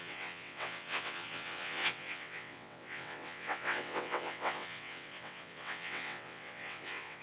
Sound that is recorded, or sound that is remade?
remade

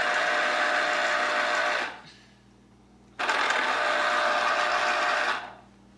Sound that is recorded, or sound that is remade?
recorded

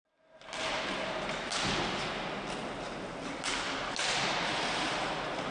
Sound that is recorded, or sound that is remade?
recorded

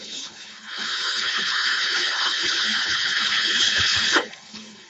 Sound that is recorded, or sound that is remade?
remade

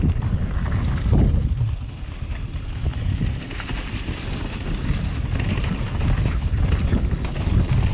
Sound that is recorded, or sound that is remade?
recorded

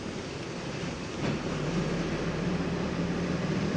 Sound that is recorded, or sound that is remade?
recorded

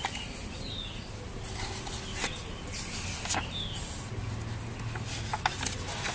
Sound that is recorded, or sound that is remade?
recorded